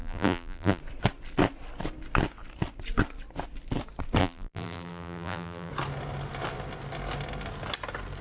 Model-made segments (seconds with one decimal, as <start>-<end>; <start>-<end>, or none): 0.0-0.8; 4.2-5.7